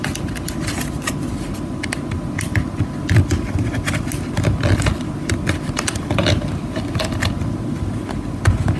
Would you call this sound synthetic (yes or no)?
no